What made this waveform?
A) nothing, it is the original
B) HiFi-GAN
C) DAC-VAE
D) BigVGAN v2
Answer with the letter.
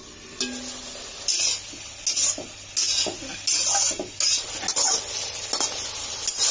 A